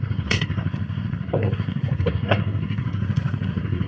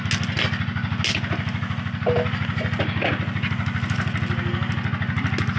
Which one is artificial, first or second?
first